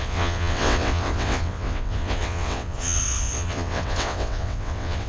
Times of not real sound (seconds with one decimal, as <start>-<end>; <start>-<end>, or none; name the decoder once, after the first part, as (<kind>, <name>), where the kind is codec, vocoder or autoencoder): 0.0-5.1 (vocoder, WaveNeXt)

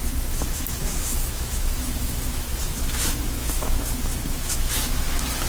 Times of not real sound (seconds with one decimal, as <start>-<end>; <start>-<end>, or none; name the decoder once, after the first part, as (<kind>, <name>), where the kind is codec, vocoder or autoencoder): 0.0-5.5 (autoencoder, DAC-VAE)

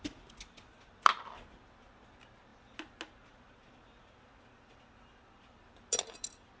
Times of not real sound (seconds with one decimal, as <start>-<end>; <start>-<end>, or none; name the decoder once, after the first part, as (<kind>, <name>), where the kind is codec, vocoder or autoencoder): none